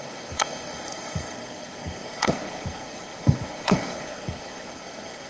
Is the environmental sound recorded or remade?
remade